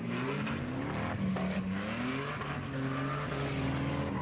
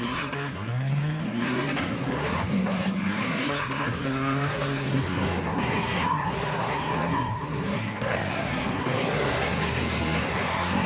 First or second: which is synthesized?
second